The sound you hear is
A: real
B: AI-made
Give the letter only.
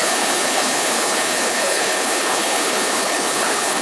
B